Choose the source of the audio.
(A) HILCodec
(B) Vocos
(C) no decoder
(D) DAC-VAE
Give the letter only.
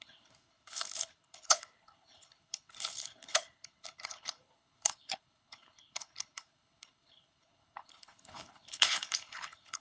A